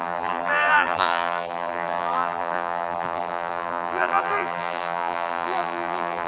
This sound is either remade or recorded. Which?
remade